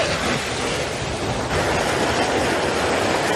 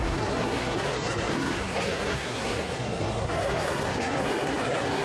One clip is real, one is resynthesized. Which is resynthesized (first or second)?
second